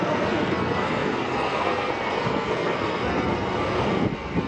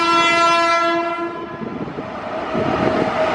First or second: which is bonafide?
second